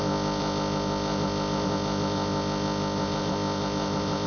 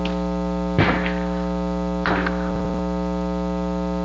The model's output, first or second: first